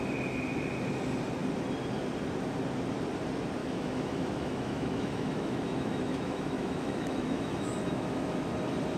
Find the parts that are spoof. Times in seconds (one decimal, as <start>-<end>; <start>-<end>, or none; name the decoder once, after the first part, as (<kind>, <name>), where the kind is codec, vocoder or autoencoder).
3.6-8.5 (autoencoder, DAC-VAE)